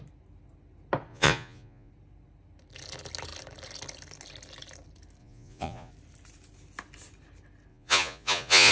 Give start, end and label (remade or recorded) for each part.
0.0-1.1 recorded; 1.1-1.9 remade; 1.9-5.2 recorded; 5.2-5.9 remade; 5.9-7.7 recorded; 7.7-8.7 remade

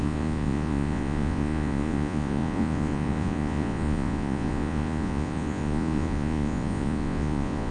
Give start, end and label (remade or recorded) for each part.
0.0-7.7 remade

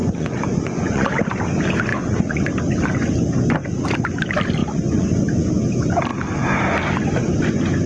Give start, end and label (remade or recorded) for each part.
0.0-1.1 remade; 1.1-1.9 recorded; 1.9-2.4 remade; 2.4-4.6 recorded; 4.6-5.5 remade; 5.5-7.9 recorded

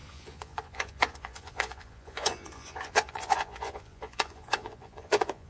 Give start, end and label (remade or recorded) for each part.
0.0-5.5 remade

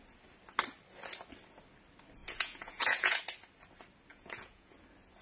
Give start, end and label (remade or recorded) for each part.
0.0-2.2 recorded; 2.2-3.2 remade; 3.2-4.1 recorded; 4.1-4.7 remade; 4.7-5.2 recorded